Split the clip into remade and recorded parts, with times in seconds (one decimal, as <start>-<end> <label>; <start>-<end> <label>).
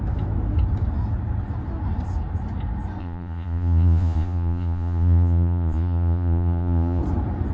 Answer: 0.0-3.0 recorded; 3.0-7.0 remade; 7.0-7.5 recorded